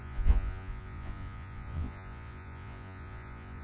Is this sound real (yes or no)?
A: no